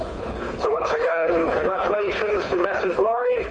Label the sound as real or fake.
fake